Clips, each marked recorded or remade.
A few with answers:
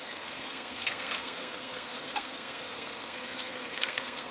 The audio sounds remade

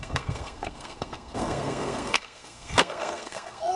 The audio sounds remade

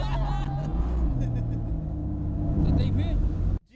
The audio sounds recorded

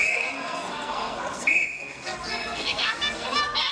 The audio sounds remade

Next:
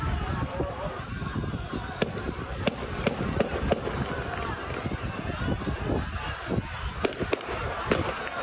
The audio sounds recorded